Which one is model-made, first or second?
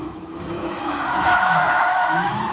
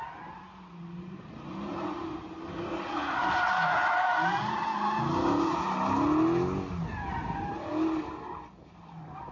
first